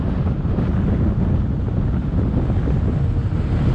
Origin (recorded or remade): recorded